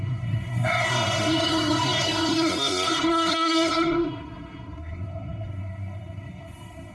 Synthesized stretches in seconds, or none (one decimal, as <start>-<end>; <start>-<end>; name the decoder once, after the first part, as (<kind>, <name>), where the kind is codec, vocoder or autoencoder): 0.0-6.9 (codec, SNAC)